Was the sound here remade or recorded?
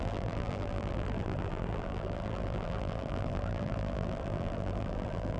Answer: remade